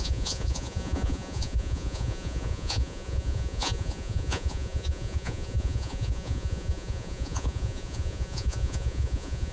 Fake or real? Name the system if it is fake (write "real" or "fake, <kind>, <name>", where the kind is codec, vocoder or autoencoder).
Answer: fake, vocoder, Vocos